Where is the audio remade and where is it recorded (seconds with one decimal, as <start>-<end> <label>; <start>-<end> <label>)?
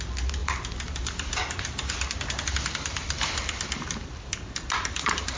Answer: 0.0-5.4 recorded